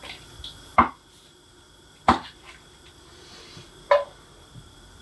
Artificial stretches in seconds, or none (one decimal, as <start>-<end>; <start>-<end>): 0.0-5.0